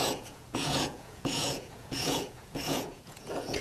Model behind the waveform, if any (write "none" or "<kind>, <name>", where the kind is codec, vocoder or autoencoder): vocoder, Vocos